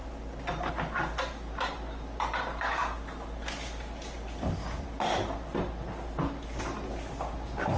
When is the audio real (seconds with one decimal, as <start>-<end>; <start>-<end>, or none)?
0.0-7.8